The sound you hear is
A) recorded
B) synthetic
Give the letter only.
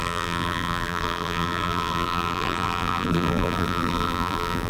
B